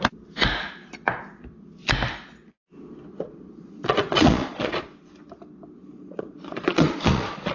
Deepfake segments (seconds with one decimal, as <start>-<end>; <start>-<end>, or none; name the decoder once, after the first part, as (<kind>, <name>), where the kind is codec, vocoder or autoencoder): 3.1-4.7 (vocoder, Vocos); 5.8-7.5